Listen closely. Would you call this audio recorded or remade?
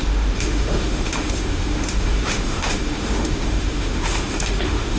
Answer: remade